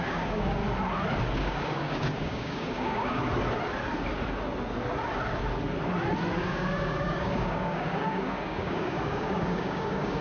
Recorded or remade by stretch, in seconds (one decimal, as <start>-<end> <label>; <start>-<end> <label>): 0.0-0.6 remade; 0.6-1.4 recorded; 1.4-3.2 remade; 3.2-6.3 recorded; 6.3-10.2 remade